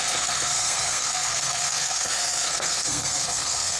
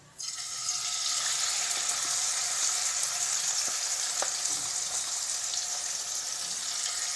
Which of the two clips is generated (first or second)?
first